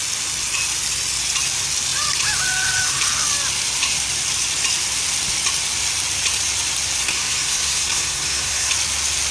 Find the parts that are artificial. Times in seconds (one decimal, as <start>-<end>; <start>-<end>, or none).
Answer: 7.0-8.7